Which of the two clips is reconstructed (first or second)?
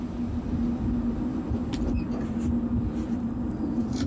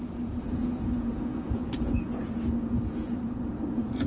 second